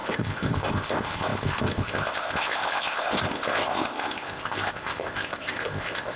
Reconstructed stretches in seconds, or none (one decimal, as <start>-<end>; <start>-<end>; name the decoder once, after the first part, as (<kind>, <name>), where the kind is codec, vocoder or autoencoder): 0.0-6.2 (codec, ZipCodec)